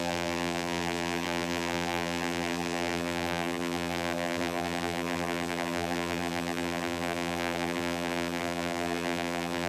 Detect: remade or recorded remade